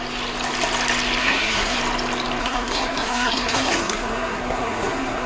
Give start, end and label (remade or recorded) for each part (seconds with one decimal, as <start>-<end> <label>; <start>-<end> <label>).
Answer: 0.0-1.2 recorded; 1.2-1.8 remade; 1.8-2.4 recorded; 2.4-5.3 remade